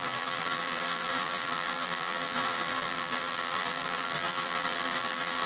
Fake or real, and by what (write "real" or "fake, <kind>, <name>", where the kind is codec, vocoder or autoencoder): fake, vocoder, BigVGAN v2